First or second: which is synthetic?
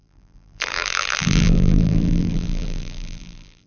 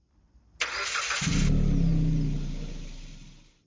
first